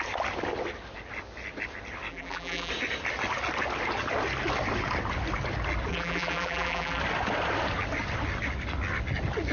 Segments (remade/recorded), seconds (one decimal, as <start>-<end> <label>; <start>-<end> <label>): 0.0-2.1 recorded; 2.1-2.7 remade; 2.7-5.9 recorded; 5.9-7.0 remade; 7.0-9.5 recorded